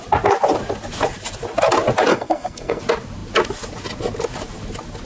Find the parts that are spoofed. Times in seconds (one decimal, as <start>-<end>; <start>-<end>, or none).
2.1-2.8